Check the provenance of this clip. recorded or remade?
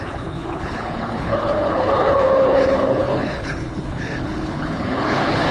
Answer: remade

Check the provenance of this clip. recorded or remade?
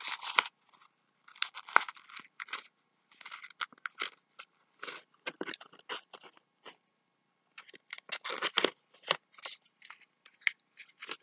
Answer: recorded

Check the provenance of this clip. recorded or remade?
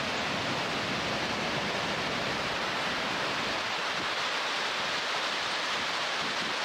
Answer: recorded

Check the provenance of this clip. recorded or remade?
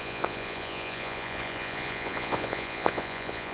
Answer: remade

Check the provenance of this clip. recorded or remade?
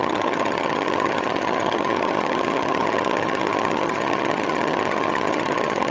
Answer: remade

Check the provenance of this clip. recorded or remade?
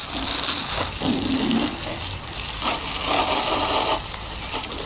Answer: recorded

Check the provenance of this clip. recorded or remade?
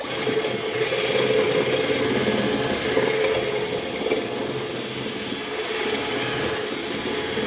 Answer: recorded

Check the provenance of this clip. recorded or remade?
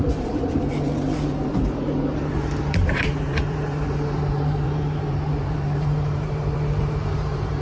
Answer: remade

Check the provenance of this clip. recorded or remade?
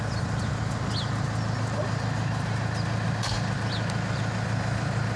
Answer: recorded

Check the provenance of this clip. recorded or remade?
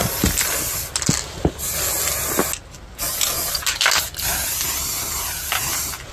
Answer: recorded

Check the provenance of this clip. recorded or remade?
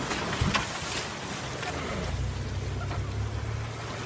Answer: recorded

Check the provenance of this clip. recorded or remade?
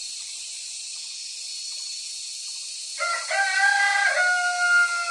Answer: recorded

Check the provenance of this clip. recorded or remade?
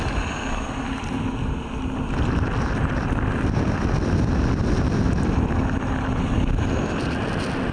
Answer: recorded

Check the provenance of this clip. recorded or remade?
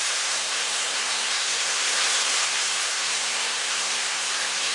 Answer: remade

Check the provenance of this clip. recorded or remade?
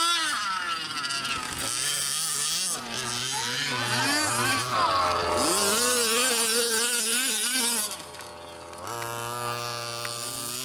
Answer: recorded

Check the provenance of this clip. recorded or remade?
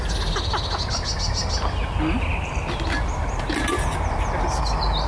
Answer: recorded